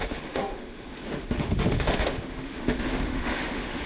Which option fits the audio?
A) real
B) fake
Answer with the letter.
B